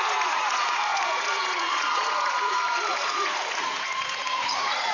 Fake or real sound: fake